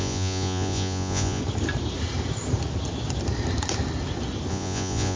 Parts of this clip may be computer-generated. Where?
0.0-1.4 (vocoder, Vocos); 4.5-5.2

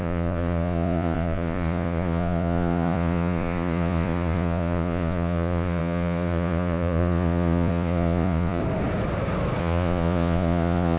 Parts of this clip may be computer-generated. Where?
0.0-8.6 (vocoder, Vocos); 9.6-11.0

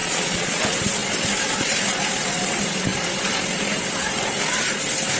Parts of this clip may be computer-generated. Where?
0.0-0.6 (vocoder, Vocos)